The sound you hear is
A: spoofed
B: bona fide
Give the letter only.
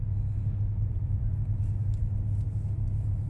B